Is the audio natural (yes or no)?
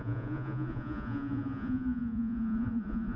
no